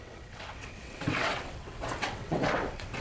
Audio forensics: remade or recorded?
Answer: remade